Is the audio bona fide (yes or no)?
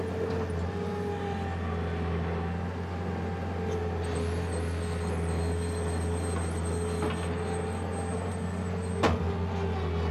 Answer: yes